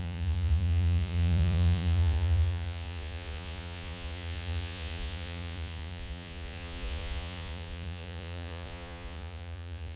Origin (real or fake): fake